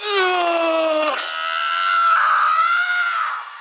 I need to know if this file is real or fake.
real